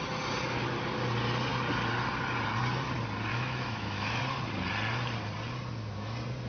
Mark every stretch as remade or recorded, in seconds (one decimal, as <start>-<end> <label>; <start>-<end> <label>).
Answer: 0.0-3.3 recorded; 3.3-4.2 remade; 4.2-6.5 recorded